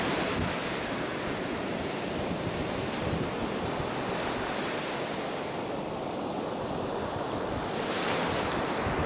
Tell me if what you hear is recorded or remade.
recorded